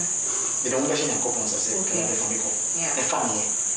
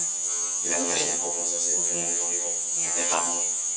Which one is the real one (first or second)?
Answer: first